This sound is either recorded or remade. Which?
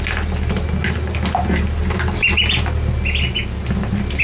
recorded